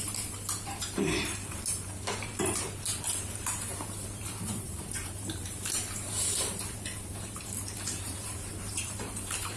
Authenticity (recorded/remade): remade